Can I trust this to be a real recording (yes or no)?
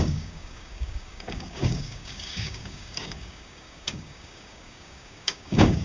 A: no